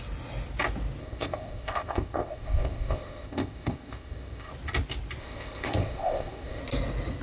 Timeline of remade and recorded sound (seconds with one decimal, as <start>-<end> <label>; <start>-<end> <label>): 0.0-1.0 recorded; 1.0-4.5 remade; 4.5-5.2 recorded; 5.2-6.6 remade; 6.6-7.2 recorded